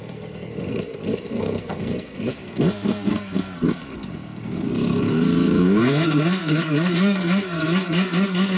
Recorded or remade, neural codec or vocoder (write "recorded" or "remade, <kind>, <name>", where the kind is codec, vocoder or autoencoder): remade, codec, SNAC